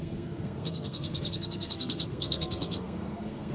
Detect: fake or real fake